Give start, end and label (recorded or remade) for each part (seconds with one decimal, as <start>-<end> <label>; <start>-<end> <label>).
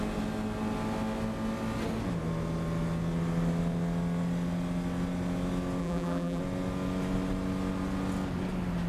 0.0-5.8 recorded; 5.8-6.4 remade; 6.4-8.9 recorded